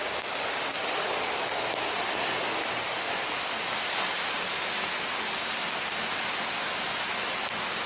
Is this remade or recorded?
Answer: recorded